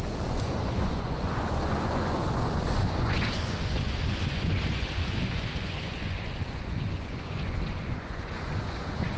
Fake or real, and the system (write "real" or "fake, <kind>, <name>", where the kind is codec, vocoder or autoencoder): fake, vocoder, Vocos